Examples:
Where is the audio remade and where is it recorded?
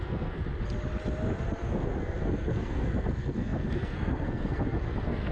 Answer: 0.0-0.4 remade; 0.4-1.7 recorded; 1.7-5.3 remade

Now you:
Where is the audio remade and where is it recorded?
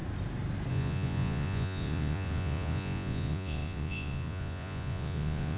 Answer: 0.0-0.7 recorded; 0.7-5.6 remade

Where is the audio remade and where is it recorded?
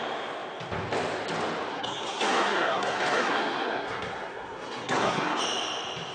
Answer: 0.0-1.7 recorded; 1.7-5.4 remade; 5.4-6.1 recorded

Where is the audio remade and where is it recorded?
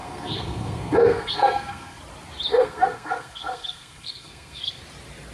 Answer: 0.0-2.0 remade; 2.0-2.5 recorded; 2.5-4.8 remade; 4.8-5.3 recorded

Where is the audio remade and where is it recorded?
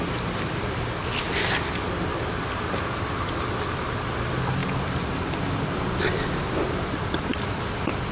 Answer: 0.0-2.1 recorded; 2.1-4.1 remade; 4.1-4.6 recorded; 4.6-6.4 remade; 6.4-7.3 recorded; 7.3-8.1 remade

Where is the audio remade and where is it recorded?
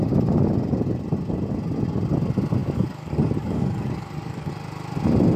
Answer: 0.0-2.6 recorded; 2.6-4.5 remade; 4.5-5.4 recorded